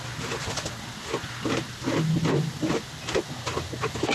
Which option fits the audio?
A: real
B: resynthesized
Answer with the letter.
A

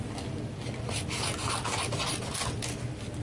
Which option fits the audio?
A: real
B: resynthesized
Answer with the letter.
A